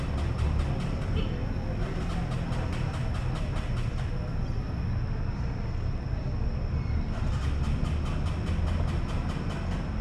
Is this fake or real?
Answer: real